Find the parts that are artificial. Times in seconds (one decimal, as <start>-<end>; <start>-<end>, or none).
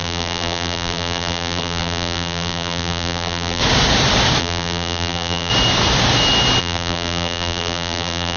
0.0-3.6; 4.4-5.5; 6.6-8.4